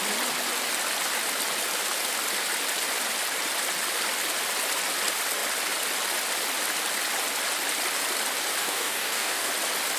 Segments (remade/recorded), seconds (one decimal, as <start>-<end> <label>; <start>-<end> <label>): 0.0-8.6 recorded; 8.6-9.5 remade; 9.5-10.0 recorded